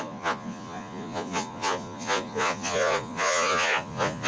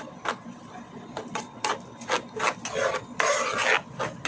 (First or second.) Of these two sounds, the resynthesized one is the first